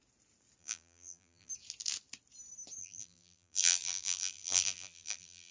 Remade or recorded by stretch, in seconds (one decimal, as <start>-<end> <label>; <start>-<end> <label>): 0.0-0.6 recorded; 0.6-1.5 remade; 1.5-2.8 recorded; 2.8-5.5 remade